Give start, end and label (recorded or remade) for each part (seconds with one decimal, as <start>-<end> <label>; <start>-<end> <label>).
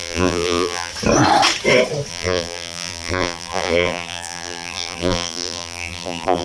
0.0-0.9 remade; 0.9-2.1 recorded; 2.1-6.4 remade